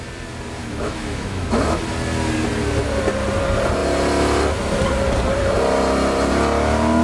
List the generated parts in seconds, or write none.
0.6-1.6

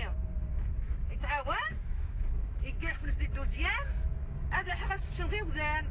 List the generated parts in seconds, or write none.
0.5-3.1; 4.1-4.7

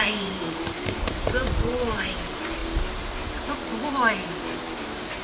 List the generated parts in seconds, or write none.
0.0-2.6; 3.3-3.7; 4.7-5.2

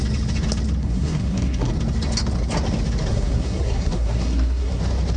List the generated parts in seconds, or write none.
0.8-1.7; 3.1-4.8

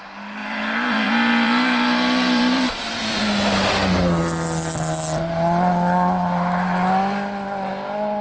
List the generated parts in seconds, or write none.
0.4-3.2